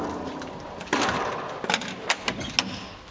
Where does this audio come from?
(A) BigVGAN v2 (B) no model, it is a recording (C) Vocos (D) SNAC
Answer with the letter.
B